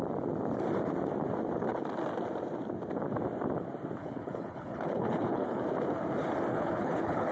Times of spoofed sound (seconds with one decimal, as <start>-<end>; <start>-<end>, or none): 4.0-5.6; 6.5-7.3